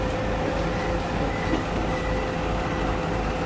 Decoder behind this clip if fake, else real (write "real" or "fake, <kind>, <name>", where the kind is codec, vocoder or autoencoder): real